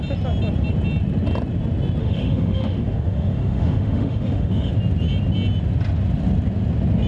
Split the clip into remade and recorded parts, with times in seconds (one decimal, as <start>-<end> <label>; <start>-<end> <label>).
0.0-2.0 recorded; 2.0-4.7 remade; 4.7-7.1 recorded